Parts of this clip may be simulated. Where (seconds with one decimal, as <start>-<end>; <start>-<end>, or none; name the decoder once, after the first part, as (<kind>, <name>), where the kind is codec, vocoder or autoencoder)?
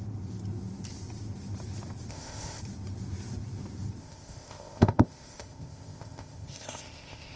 2.1-2.6 (codec, ZipCodec); 4.0-7.4